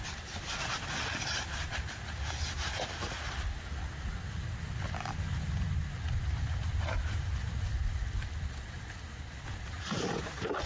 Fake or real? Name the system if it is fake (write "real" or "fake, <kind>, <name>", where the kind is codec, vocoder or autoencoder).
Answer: real